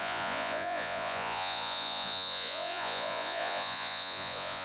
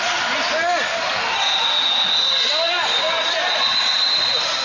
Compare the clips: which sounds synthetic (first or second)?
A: first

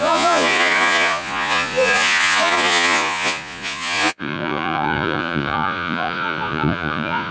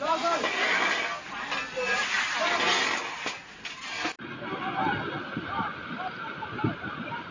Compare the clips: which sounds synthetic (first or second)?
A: first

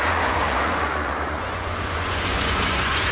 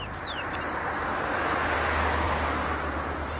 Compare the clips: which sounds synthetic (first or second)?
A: first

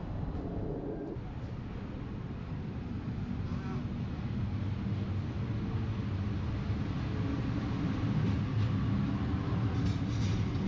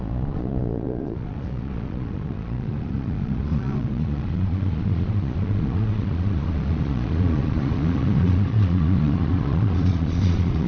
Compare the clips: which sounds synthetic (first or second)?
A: second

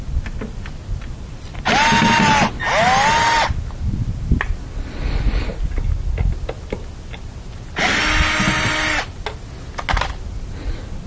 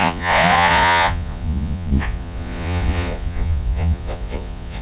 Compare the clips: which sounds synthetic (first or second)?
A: second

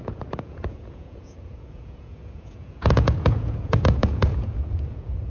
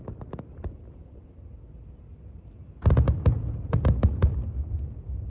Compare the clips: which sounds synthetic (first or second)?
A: first